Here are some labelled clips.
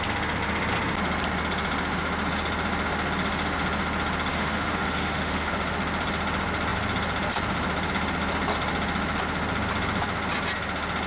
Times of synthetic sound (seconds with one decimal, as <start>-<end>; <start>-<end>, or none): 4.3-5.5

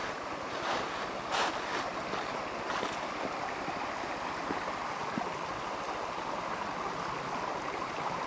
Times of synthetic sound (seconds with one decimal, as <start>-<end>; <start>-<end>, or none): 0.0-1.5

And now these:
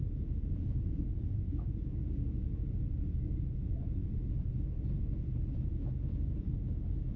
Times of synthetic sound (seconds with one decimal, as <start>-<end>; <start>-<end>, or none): 0.0-7.2

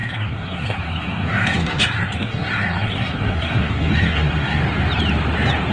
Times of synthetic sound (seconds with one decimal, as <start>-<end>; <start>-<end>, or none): 0.0-4.6

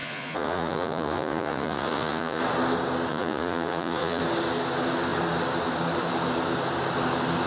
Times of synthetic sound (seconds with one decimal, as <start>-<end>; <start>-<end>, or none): 0.0-2.4; 3.1-4.2